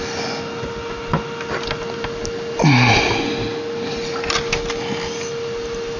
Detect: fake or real real